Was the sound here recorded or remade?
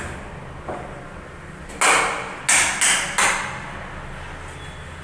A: recorded